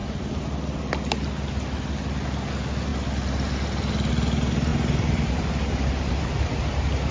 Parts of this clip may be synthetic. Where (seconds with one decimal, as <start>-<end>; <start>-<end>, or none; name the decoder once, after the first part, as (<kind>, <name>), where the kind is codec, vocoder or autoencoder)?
none